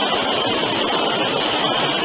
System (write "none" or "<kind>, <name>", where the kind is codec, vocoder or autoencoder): none